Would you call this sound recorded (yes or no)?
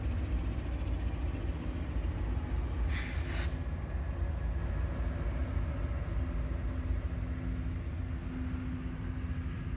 yes